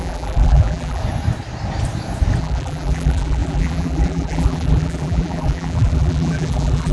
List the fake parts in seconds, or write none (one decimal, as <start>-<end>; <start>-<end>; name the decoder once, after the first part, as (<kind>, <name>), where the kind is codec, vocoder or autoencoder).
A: 0.0-1.0 (vocoder, BigVGAN v2); 2.4-6.9